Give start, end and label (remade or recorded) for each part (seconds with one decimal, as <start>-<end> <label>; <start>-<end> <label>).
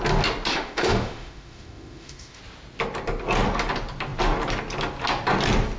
0.0-0.5 recorded; 0.5-2.4 remade; 2.4-5.8 recorded